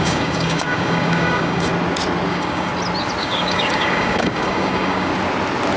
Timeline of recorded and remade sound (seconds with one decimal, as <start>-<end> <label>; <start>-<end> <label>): 0.0-1.7 remade; 1.7-2.3 recorded; 2.3-2.7 remade; 2.7-3.2 recorded; 3.2-5.1 remade; 5.1-5.8 recorded

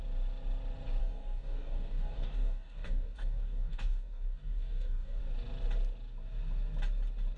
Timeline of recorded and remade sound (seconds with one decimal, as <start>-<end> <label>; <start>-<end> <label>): 0.0-1.0 recorded; 1.0-5.2 remade; 5.2-7.4 recorded

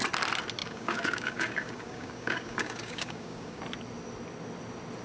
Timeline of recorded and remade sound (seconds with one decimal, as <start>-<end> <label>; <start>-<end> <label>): 0.0-0.6 recorded; 0.6-3.6 remade; 3.6-5.0 recorded

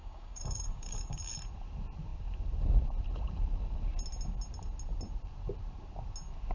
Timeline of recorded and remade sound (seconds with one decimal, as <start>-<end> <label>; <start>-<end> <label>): 0.0-1.2 remade; 1.2-6.5 recorded

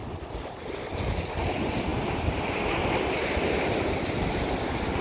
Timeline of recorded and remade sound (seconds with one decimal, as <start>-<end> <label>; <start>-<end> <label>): 0.0-5.0 recorded

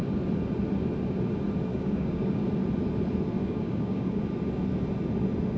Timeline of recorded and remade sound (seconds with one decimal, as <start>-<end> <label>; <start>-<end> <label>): 0.0-1.7 recorded; 1.7-2.4 remade; 2.4-3.4 recorded; 3.4-4.2 remade; 4.2-5.6 recorded

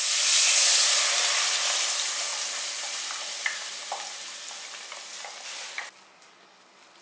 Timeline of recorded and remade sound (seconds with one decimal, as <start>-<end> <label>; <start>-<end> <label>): 0.0-7.0 recorded

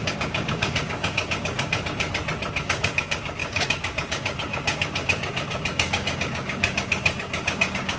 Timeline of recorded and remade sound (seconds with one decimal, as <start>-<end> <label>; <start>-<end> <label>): 0.0-2.1 remade; 2.1-2.6 recorded; 2.6-8.0 remade